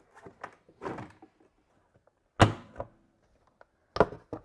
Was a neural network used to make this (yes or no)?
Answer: no